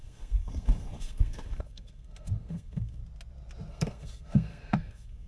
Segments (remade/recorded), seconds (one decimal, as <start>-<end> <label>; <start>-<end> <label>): 0.0-3.0 remade; 3.0-3.7 recorded; 3.7-5.3 remade